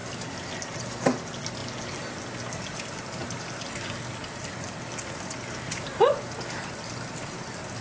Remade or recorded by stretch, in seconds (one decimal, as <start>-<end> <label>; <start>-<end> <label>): 0.0-7.8 recorded

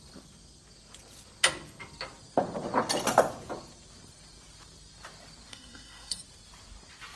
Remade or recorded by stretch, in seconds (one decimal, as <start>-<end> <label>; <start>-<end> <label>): 0.0-5.5 recorded; 5.5-6.2 remade; 6.2-7.2 recorded

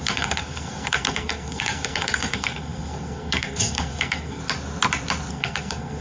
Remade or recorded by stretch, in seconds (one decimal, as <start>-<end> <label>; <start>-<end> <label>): 0.0-4.4 remade; 4.4-5.3 recorded; 5.3-6.0 remade

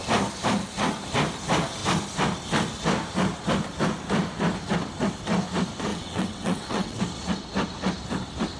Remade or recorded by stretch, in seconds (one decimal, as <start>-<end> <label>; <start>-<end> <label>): 0.0-5.9 recorded; 5.9-7.0 remade; 7.0-8.6 recorded

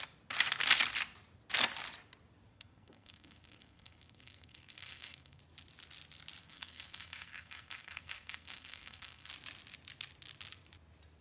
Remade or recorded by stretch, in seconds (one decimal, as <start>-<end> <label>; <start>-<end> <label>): 0.0-2.5 recorded; 2.5-5.4 remade; 5.4-6.4 recorded; 6.4-9.3 remade; 9.3-11.2 recorded

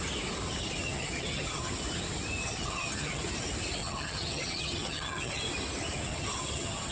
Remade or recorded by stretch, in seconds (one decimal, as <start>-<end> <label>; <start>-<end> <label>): 0.0-0.8 recorded; 0.8-1.7 remade; 1.7-2.4 recorded; 2.4-3.3 remade; 3.3-3.8 recorded; 3.8-5.4 remade; 5.4-6.1 recorded; 6.1-6.9 remade

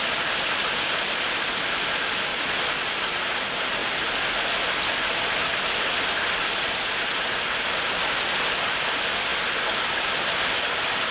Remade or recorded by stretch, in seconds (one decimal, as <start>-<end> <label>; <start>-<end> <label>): 0.0-2.3 recorded; 2.3-2.9 remade; 2.9-11.1 recorded